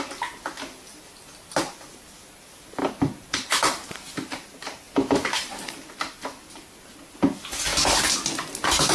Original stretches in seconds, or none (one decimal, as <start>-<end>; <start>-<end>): 0.0-0.9; 1.8-2.8; 6.0-8.9